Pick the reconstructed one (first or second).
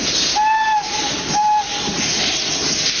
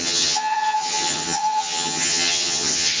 second